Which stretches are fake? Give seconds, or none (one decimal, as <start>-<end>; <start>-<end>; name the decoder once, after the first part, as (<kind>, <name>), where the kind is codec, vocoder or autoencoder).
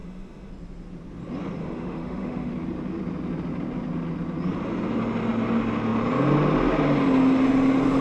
0.0-0.5 (autoencoder, DAC-VAE); 1.6-2.5